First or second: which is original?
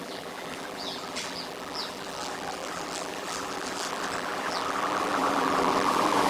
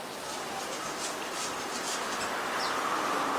second